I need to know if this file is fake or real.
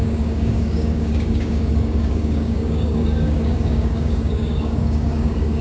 fake